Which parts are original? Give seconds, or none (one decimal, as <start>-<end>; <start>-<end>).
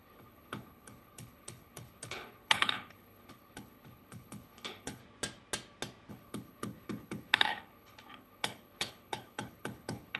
5.0-6.1